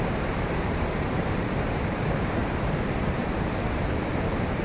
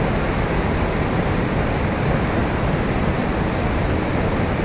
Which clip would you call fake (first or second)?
first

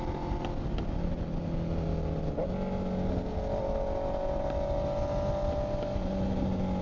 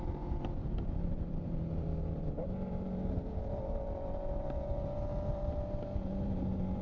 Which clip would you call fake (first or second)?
second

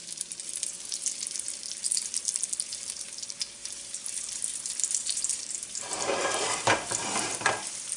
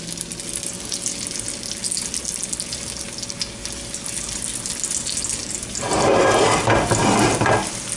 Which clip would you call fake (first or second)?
first